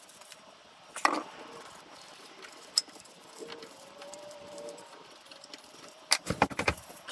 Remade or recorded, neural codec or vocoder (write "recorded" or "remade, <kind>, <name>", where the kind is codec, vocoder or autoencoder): remade, vocoder, BigVGAN v2